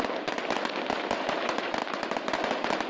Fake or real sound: real